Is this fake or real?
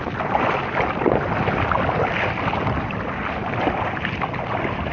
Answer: real